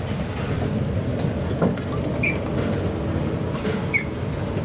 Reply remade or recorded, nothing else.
recorded